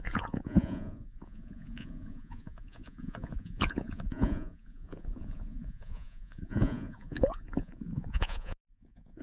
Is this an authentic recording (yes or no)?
no